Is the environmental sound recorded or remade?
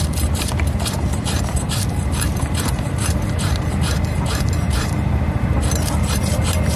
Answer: remade